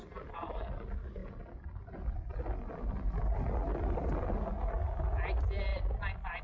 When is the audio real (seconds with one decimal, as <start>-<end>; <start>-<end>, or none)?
0.0-5.7